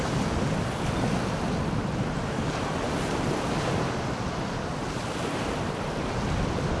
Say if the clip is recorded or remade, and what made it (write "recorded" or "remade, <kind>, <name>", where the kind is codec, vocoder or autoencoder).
recorded